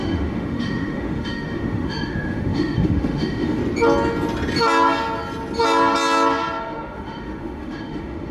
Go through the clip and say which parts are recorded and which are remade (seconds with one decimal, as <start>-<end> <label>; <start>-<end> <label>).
0.0-3.6 remade; 3.6-6.6 recorded; 6.6-8.3 remade